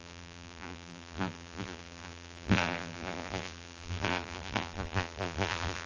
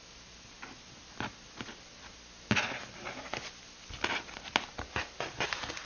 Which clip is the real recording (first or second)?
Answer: second